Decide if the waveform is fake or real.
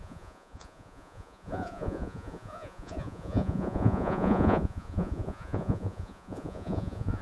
fake